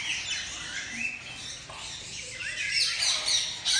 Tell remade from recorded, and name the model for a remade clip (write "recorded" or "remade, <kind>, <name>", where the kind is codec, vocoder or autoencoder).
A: recorded